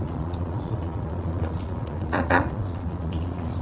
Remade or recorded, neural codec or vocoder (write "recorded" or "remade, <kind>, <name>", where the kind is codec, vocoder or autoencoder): remade, vocoder, Vocos